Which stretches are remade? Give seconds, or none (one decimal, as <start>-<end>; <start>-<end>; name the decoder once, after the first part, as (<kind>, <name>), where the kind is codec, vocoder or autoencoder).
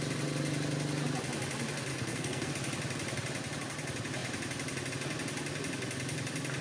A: 1.9-2.5 (codec, SNAC)